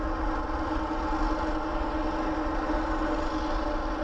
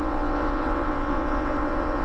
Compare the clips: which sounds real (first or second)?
first